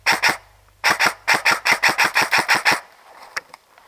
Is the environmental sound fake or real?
fake